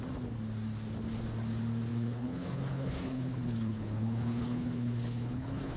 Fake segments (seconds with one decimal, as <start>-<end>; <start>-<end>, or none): 1.9-5.8